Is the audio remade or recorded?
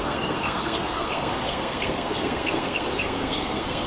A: remade